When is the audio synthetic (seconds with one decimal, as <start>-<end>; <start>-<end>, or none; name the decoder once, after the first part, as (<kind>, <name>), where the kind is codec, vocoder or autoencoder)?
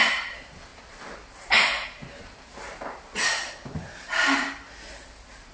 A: none